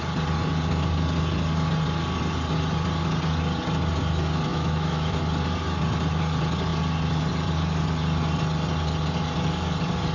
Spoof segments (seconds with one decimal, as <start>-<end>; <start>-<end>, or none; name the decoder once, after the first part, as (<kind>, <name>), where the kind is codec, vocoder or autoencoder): 4.5-5.2 (autoencoder, DAC-VAE)